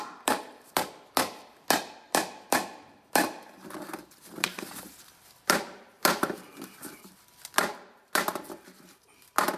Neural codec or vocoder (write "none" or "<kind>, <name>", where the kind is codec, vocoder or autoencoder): vocoder, BigVGAN v2